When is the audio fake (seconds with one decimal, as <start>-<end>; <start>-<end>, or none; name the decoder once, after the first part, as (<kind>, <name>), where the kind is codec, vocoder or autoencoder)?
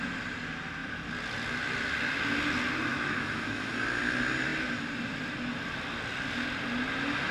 2.9-3.7 (autoencoder, DAC-VAE)